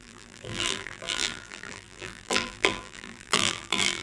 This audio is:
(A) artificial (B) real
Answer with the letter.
A